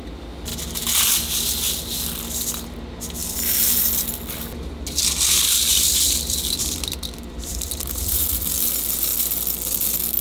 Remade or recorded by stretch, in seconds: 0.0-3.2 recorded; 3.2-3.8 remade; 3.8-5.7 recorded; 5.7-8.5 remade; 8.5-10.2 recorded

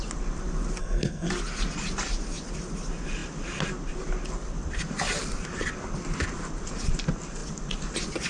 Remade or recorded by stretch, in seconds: 0.0-0.8 recorded; 0.8-1.3 remade; 1.3-8.3 recorded

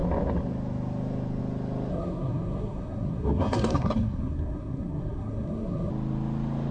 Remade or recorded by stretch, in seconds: 0.0-1.9 recorded; 1.9-5.9 remade; 5.9-6.7 recorded

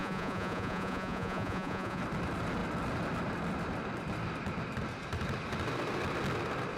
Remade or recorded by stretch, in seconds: 0.0-2.0 remade; 2.0-6.8 recorded

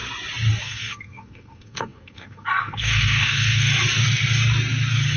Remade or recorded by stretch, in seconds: 0.0-0.6 recorded; 0.6-3.7 remade; 3.7-5.2 recorded

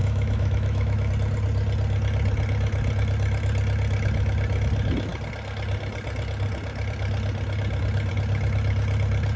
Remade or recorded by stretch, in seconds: 0.0-1.1 remade; 1.1-9.4 recorded

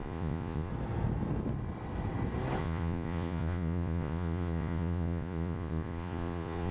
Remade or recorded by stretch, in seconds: 0.0-0.7 remade; 0.7-2.6 recorded; 2.6-6.7 remade

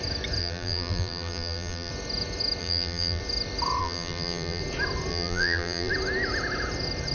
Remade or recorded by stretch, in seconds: 0.0-0.4 recorded; 0.4-1.9 remade; 1.9-2.6 recorded; 2.6-3.2 remade; 3.2-3.8 recorded; 3.8-4.6 remade; 4.6-5.1 recorded; 5.1-5.9 remade; 5.9-7.1 recorded